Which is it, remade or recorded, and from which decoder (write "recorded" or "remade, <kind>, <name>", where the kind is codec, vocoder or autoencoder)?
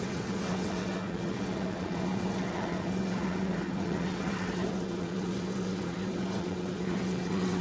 remade, vocoder, WaveNeXt